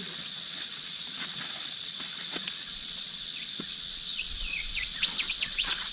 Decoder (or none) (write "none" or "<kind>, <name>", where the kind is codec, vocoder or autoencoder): vocoder, WaveNeXt